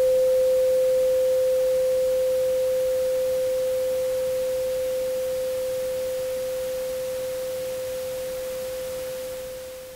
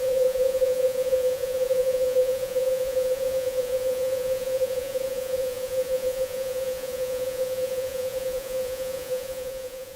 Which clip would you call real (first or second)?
first